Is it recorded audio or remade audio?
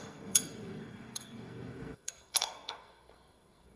remade